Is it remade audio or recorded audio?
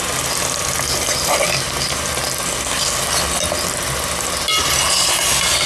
recorded